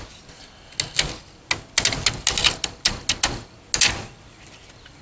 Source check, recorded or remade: recorded